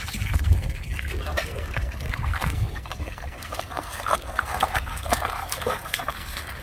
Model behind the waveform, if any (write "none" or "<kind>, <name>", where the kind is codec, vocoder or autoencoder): codec, SNAC